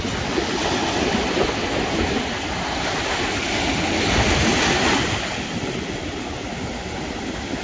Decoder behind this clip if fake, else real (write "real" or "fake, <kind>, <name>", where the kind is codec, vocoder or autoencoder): real